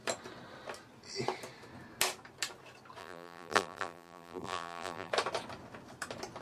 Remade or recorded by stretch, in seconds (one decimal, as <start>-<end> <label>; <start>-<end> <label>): 0.0-3.0 recorded; 3.0-5.1 remade; 5.1-6.4 recorded